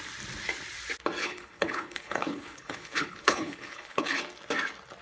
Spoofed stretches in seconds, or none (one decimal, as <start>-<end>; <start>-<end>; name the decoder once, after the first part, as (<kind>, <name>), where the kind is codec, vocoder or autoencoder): 1.2-4.2 (codec, HILCodec)